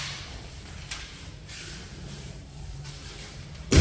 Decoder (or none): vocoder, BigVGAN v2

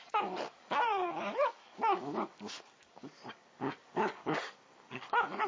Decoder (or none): codec, DAC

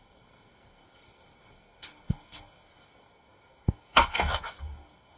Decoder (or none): codec, SNAC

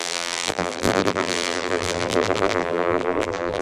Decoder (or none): vocoder, BigVGAN v2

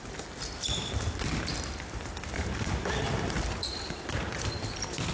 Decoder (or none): vocoder, BigVGAN v2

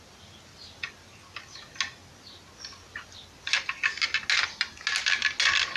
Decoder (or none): none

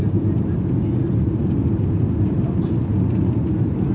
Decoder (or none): none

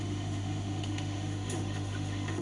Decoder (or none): autoencoder, DAC-VAE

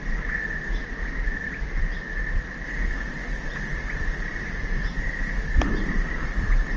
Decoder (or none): none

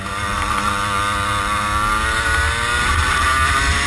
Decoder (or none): none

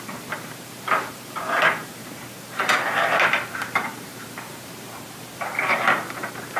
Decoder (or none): vocoder, BigVGAN v2